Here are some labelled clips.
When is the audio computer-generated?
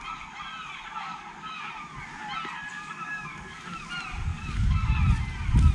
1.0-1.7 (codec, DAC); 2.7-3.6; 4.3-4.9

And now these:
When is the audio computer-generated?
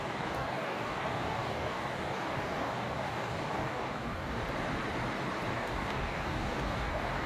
0.0-4.4 (codec, DAC); 5.5-7.3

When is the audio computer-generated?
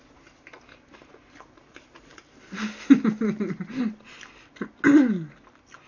none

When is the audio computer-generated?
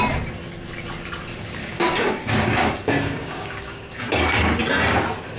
1.6-4.1 (codec, DAC)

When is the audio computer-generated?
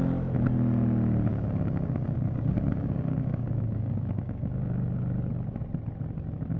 1.3-5.0 (codec, DAC)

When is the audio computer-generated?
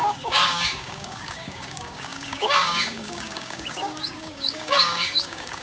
0.0-5.6 (codec, DAC)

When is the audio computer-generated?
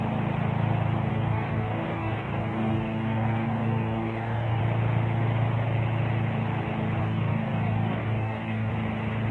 1.1-4.6 (codec, DAC); 7.0-8.7